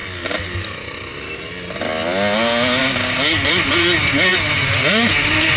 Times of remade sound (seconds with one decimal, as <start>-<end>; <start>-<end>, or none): 2.8-3.5